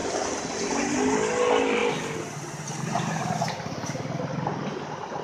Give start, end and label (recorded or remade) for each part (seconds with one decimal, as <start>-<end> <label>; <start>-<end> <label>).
0.0-5.2 recorded